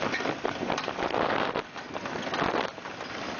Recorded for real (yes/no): yes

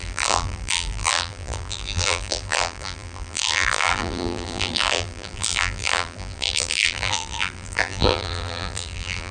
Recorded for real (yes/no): no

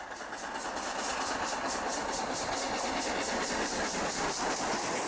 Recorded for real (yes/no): yes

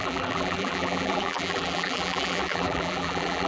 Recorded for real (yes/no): no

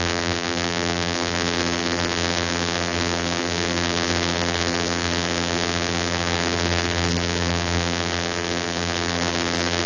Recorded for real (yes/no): no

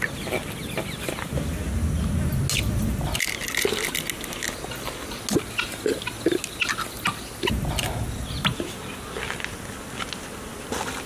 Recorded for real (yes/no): yes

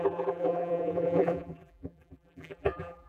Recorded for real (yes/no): no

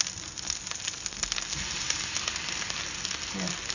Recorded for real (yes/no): yes